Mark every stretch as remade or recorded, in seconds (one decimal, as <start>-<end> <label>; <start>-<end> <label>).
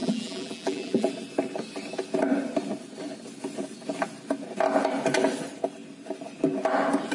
0.0-1.1 remade; 1.1-7.1 recorded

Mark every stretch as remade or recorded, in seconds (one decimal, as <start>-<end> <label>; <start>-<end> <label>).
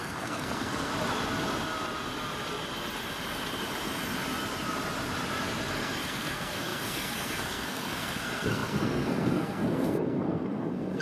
0.0-0.9 remade; 0.9-5.7 recorded; 5.7-11.0 remade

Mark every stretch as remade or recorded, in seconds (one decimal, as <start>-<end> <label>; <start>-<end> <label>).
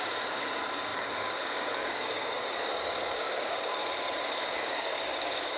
0.0-3.8 remade; 3.8-4.3 recorded; 4.3-5.6 remade